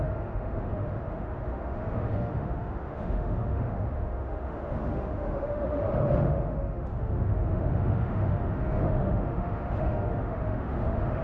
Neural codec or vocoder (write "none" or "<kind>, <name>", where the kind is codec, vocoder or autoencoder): autoencoder, DAC-VAE